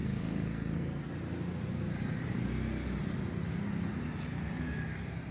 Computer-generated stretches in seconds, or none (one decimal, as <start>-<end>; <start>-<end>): 0.0-1.0